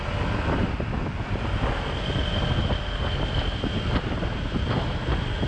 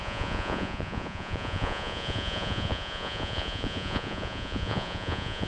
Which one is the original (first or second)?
first